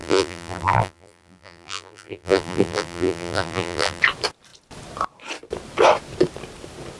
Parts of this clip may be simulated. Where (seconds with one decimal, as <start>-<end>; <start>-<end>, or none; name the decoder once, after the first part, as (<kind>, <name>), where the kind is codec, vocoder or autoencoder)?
0.0-4.0 (vocoder, BigVGAN v2)

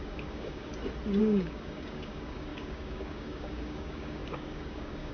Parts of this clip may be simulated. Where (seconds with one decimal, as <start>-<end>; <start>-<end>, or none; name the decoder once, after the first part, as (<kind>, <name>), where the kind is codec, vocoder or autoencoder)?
0.0-0.7 (codec, DAC); 1.2-5.1

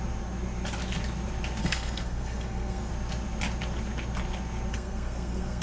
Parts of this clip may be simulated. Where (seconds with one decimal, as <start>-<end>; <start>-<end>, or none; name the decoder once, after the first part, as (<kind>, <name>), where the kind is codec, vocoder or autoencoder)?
1.6-2.9 (codec, SNAC); 4.7-5.6

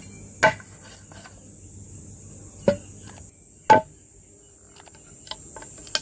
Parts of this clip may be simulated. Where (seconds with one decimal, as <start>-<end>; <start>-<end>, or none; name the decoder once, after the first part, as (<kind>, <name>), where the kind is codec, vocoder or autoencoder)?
none

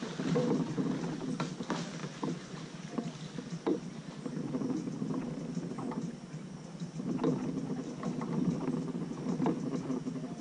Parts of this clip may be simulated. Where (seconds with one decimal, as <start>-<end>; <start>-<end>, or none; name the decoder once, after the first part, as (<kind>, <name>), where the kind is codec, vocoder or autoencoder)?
none